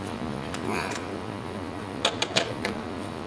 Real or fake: fake